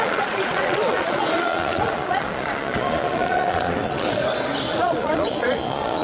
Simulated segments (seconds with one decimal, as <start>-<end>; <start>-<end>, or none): 0.0-4.2; 4.7-6.0